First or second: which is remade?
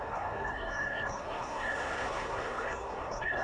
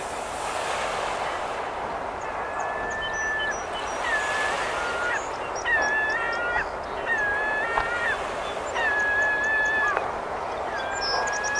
first